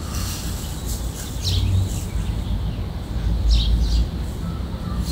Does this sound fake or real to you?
real